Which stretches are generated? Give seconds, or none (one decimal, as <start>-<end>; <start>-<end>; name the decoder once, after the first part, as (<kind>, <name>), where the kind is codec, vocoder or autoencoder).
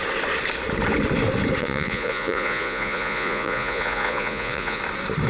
1.6-4.8 (vocoder, Vocos)